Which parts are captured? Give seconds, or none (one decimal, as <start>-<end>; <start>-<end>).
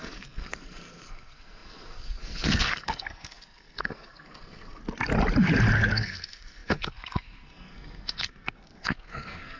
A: 4.8-5.9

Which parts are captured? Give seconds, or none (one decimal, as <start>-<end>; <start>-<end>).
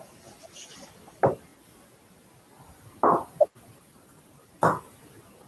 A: 0.0-5.5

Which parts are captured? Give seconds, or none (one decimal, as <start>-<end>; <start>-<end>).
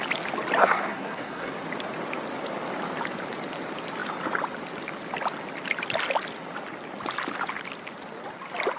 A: 0.0-0.6; 1.5-8.8